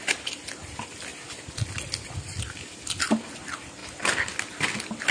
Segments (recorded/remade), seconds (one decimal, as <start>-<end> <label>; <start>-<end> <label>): 0.0-5.1 recorded